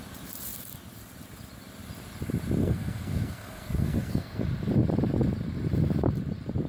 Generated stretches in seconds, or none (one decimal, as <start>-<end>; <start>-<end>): 2.6-4.4